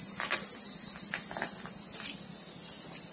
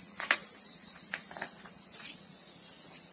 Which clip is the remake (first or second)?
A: second